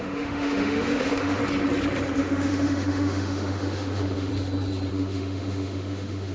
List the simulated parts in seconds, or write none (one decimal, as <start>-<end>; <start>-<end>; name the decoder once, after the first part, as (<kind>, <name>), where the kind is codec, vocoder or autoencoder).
0.0-1.4 (autoencoder, DAC-VAE); 2.2-4.3; 4.9-6.3